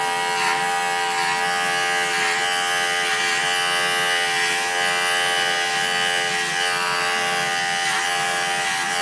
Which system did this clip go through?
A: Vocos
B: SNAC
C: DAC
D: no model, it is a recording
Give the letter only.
D